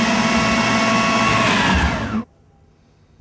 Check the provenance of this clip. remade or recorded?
recorded